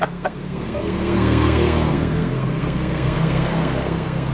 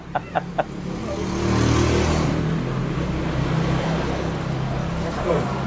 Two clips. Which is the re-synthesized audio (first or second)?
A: first